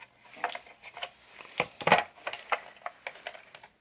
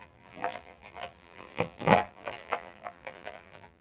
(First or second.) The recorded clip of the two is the first